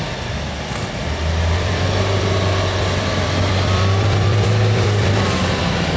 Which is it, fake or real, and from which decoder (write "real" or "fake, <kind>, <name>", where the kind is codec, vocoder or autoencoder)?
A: fake, vocoder, BigVGAN v2